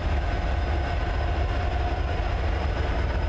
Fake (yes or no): no